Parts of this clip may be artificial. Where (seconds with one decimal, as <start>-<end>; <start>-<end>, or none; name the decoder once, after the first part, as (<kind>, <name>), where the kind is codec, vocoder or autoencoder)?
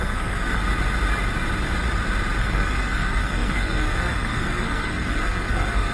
0.0-0.6 (codec, SNAC); 2.4-5.9